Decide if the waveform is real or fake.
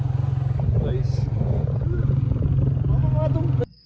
real